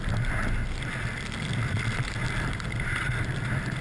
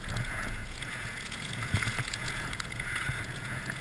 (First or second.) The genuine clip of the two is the first